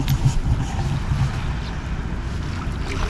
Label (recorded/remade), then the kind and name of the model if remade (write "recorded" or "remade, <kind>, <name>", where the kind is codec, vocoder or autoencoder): recorded